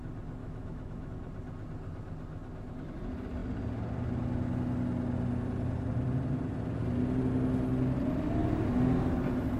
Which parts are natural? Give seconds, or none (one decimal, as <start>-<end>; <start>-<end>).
0.0-0.4; 1.1-9.6